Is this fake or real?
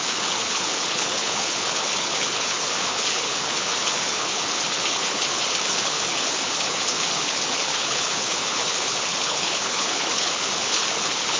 fake